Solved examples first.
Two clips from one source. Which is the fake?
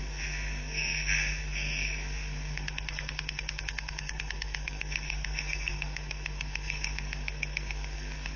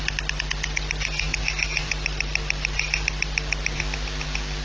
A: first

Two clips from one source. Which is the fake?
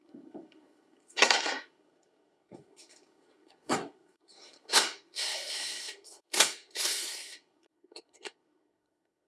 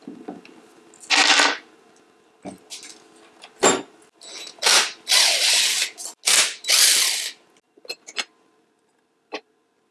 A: first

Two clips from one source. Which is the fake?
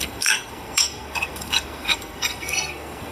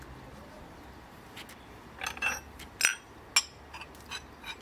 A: first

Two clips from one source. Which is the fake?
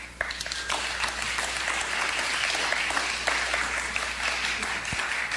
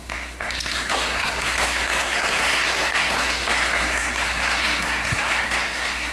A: second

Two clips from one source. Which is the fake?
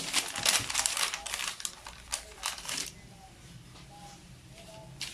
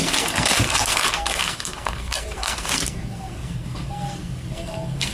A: second